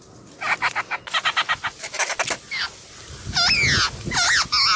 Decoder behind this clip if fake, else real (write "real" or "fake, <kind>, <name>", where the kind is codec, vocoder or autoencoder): real